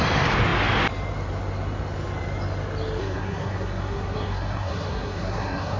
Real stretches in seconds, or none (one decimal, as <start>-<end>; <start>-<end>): 0.0-3.0